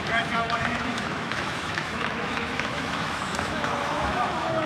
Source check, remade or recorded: remade